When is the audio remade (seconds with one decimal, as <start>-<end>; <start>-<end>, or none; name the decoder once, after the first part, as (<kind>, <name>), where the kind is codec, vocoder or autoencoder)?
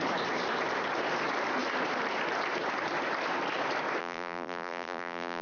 4.0-5.4 (vocoder, BigVGAN v2)